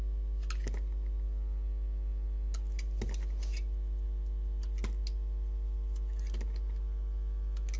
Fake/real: real